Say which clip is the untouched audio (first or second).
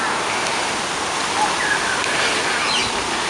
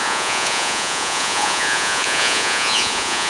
first